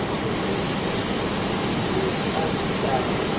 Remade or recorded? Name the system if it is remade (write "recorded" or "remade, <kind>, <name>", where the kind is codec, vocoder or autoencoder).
recorded